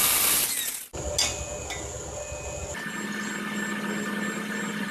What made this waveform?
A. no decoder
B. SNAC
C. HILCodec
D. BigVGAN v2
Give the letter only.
A